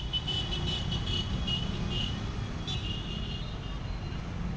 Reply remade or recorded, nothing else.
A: recorded